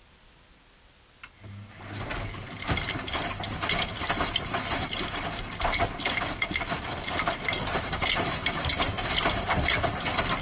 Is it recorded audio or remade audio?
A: recorded